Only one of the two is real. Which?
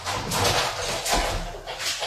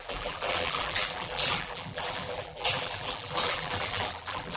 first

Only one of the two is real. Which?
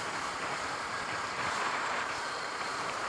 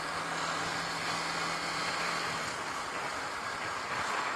second